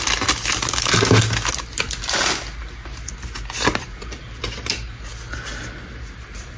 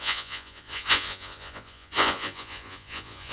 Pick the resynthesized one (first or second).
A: second